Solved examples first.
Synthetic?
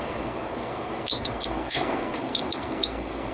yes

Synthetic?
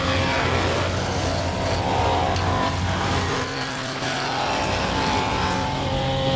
no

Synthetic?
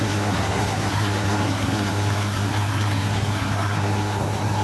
yes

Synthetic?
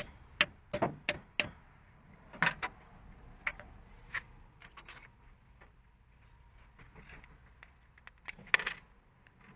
no